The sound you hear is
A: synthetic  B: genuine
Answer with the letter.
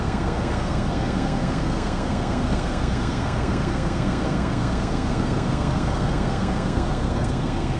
A